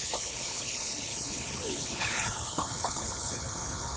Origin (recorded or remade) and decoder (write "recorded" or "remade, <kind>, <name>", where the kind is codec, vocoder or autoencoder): remade, codec, HILCodec